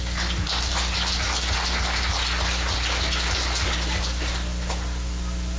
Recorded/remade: recorded